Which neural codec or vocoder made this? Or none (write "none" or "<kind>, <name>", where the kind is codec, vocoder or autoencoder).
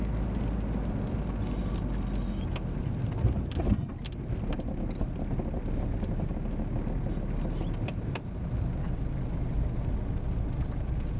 none